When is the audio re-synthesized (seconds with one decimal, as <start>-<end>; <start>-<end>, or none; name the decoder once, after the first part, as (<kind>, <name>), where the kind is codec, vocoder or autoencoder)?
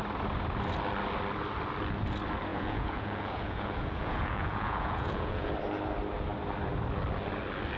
2.5-5.5 (vocoder, Vocos)